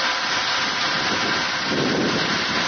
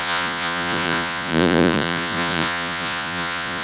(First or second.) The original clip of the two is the first